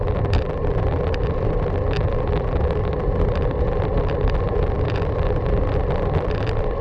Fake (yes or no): yes